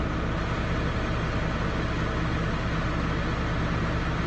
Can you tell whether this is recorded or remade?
recorded